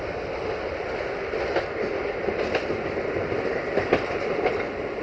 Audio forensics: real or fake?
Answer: real